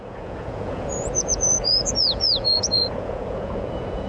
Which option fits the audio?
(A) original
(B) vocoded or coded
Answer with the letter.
B